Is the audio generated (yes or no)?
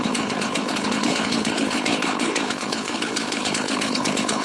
yes